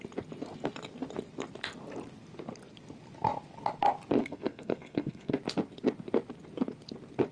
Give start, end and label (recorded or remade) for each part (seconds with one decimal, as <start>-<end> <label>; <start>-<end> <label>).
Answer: 0.0-4.2 recorded; 4.2-5.4 remade; 5.4-7.3 recorded